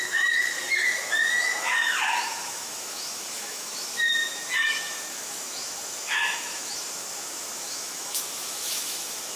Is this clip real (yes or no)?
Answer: no